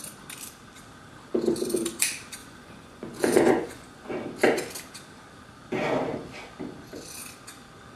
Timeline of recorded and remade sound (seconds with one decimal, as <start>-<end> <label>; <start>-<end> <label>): 0.0-2.4 recorded; 2.4-4.1 remade; 4.1-8.0 recorded

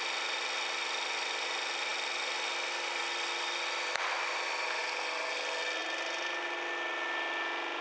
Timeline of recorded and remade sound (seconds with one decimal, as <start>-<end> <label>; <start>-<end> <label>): 0.0-7.8 recorded